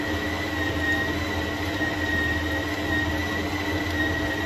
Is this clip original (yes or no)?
yes